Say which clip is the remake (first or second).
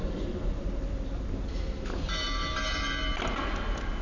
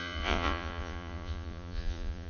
second